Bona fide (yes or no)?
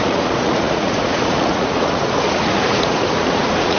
no